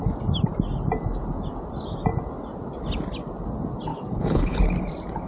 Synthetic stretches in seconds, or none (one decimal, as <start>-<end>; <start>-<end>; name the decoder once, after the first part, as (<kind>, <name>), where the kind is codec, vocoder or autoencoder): 3.9-4.6 (codec, HILCodec)